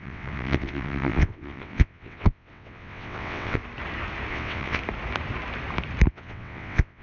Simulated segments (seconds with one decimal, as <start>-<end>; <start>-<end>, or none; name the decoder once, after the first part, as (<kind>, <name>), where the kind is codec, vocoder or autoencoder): 0.0-3.6 (vocoder, WaveNeXt); 4.3-4.8; 6.1-7.0